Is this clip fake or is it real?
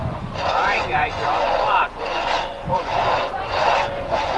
fake